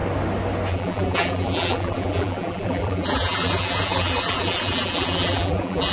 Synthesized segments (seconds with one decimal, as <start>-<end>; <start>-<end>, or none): 0.7-5.9